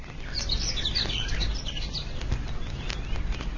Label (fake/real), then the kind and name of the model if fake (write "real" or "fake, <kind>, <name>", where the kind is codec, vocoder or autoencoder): real